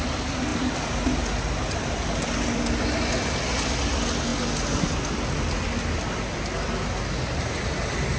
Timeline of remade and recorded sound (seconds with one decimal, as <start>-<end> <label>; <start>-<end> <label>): 0.0-8.2 recorded